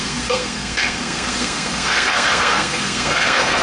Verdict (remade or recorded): remade